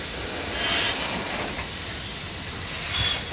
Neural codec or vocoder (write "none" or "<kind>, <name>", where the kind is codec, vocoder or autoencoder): none